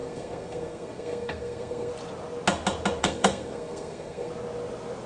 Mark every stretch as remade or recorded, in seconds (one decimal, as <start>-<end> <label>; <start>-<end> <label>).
0.0-1.9 remade; 1.9-3.0 recorded; 3.0-4.3 remade; 4.3-5.1 recorded